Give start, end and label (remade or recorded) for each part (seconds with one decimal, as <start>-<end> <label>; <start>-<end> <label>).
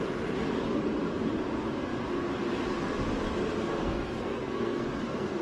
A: 0.0-3.7 recorded; 3.7-5.4 remade